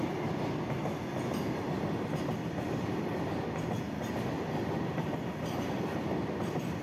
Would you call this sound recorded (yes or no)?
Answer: yes